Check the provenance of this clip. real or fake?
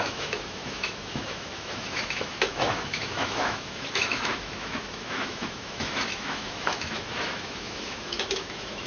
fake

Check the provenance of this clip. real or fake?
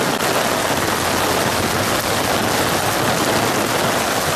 real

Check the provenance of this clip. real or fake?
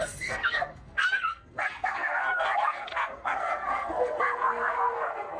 fake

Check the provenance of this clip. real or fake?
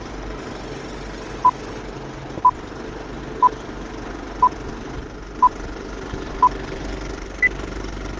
real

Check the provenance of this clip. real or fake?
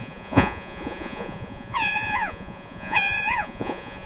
fake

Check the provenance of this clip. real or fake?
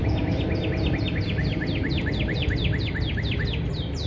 real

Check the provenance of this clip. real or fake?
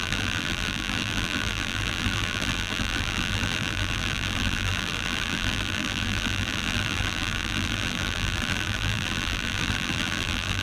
fake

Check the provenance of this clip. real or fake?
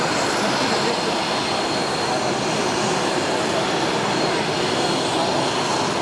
real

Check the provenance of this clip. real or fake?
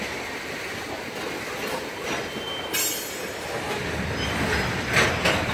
real